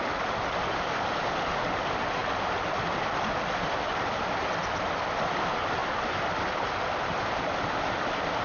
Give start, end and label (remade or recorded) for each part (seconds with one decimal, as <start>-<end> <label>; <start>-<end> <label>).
0.0-8.4 recorded